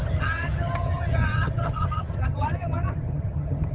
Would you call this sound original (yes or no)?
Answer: no